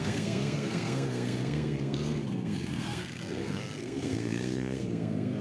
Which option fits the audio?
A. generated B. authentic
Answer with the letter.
A